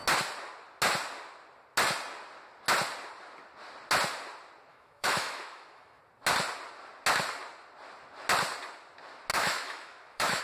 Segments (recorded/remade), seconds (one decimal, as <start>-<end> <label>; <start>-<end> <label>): 0.0-4.7 recorded; 4.7-6.0 remade; 6.0-9.3 recorded; 9.3-10.4 remade